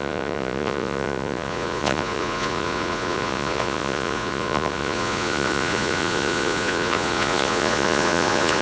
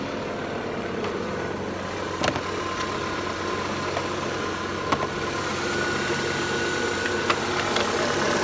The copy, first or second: first